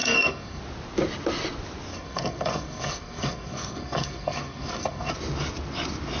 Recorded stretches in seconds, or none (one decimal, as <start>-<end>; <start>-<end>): 0.6-1.9; 5.1-6.2